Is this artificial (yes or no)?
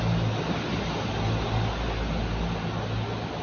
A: no